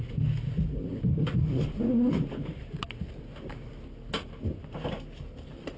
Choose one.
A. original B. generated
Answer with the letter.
A